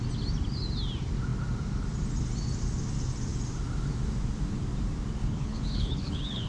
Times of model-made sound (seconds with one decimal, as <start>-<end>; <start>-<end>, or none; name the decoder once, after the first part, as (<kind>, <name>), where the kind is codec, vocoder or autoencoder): 5.2-6.5 (codec, HILCodec)